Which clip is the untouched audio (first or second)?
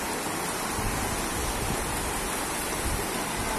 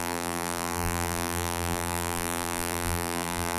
first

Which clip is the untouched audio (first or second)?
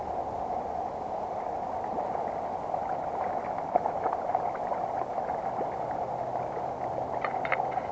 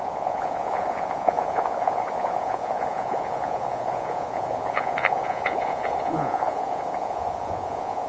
first